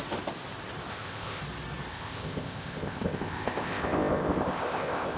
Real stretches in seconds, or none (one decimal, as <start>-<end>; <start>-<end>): 0.0-0.9; 1.4-1.9